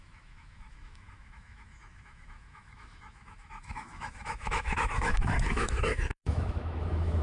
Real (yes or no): no